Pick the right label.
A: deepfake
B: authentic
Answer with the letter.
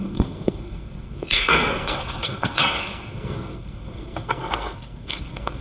A